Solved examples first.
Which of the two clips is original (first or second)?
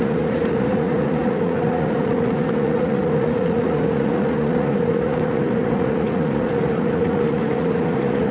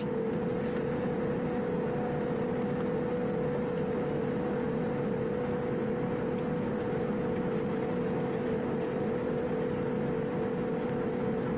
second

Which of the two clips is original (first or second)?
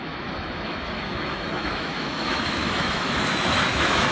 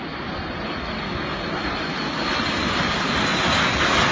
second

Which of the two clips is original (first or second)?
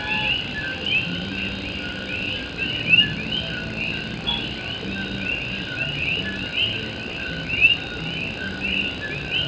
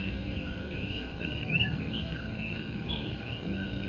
first